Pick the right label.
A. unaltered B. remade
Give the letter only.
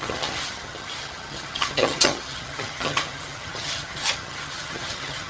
B